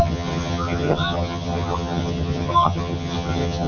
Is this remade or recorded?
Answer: remade